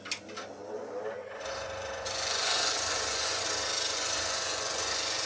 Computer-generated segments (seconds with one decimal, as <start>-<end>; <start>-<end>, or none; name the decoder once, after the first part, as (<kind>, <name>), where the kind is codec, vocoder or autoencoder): 1.2-3.4 (vocoder, Vocos); 3.9-5.3